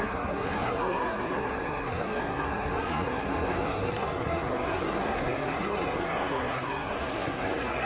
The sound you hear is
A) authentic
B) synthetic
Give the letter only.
B